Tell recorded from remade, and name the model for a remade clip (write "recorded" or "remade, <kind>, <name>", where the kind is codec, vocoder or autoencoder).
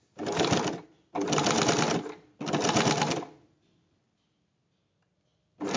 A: recorded